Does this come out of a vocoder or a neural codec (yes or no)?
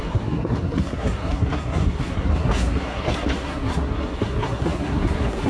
yes